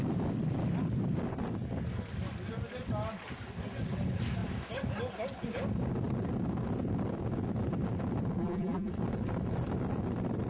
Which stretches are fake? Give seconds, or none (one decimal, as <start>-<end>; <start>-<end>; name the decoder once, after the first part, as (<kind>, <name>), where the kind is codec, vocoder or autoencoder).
8.4-8.9 (vocoder, BigVGAN v2)